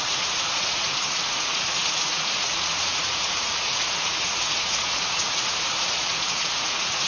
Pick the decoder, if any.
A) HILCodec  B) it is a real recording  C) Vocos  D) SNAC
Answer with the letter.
C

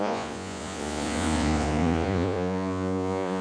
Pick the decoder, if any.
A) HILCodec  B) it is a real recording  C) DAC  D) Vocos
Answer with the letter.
D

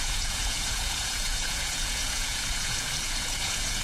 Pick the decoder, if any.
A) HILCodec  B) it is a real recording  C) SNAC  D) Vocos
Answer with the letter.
D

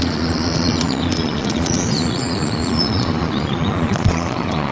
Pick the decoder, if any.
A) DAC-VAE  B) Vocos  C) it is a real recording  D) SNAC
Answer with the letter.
B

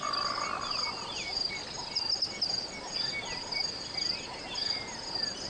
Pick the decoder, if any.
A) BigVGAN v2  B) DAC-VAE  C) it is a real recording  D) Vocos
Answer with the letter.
C